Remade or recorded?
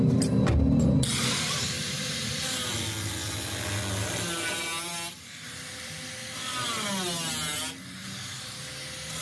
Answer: recorded